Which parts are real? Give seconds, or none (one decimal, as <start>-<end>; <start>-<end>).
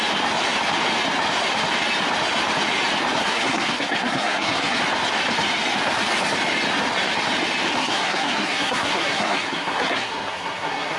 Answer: 0.0-3.2; 4.8-7.8